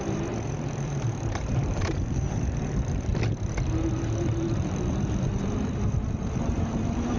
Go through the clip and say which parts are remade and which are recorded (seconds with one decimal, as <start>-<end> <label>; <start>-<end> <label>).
0.0-3.1 remade; 3.1-3.9 recorded; 3.9-7.2 remade